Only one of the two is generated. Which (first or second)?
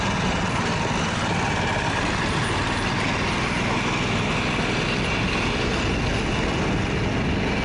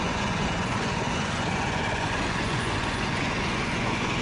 second